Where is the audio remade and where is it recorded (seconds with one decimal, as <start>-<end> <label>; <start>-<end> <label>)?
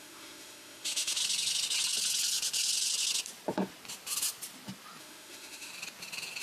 0.0-1.2 remade; 1.2-5.0 recorded; 5.0-5.7 remade; 5.7-6.4 recorded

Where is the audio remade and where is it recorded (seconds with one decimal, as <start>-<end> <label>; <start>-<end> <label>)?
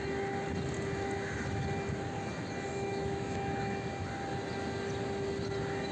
0.0-2.7 recorded; 2.7-3.9 remade; 3.9-5.9 recorded